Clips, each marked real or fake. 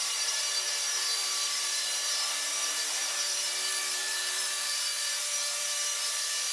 fake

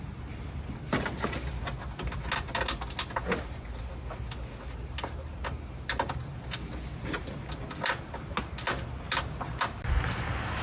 real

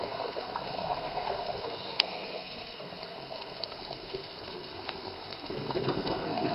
fake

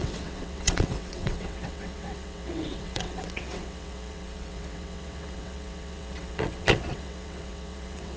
fake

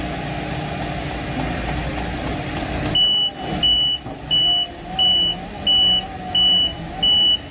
real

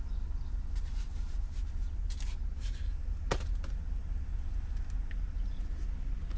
real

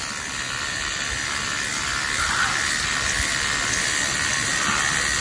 real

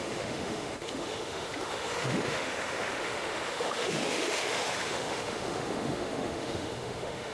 fake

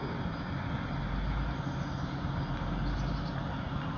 real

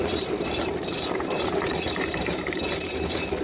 fake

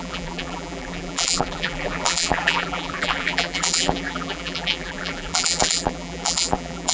fake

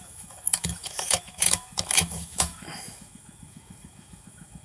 fake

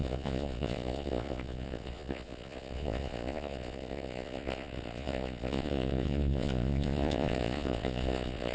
fake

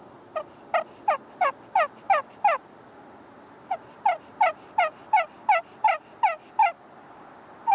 real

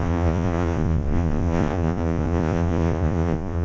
fake